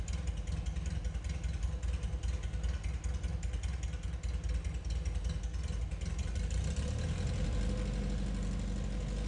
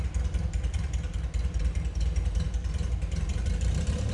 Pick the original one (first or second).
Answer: first